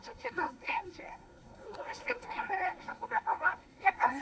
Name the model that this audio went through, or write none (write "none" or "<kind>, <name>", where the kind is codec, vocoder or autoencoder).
codec, SNAC